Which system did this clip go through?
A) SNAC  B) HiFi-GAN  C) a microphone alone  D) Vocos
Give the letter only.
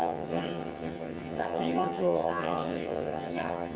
B